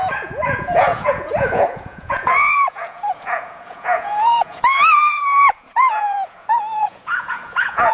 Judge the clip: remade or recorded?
remade